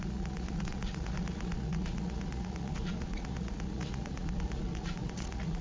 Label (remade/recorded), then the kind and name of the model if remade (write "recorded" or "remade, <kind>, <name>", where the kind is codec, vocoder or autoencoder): remade, vocoder, Vocos